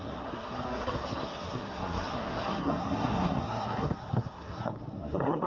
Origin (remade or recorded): remade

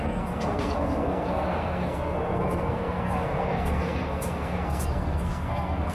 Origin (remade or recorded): remade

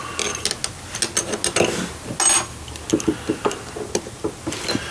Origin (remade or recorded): recorded